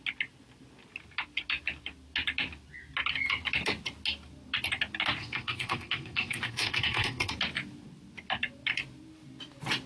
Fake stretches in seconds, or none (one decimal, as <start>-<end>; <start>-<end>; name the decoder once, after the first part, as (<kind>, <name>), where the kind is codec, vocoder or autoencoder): 5.2-7.3 (codec, SNAC)